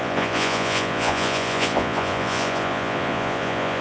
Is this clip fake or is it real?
fake